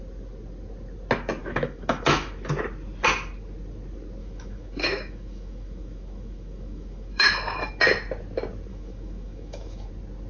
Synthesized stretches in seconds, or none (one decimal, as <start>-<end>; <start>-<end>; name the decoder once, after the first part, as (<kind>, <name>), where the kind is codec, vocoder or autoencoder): 1.4-2.5 (autoencoder, DAC-VAE); 4.2-7.7; 8.7-9.9